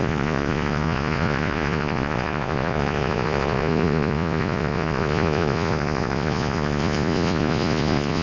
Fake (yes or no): yes